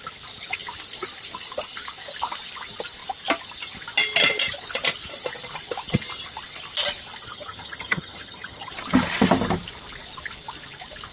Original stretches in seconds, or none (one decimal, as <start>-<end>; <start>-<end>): 0.0-7.2; 8.7-11.1